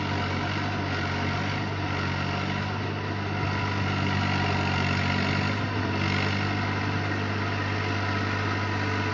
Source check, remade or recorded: recorded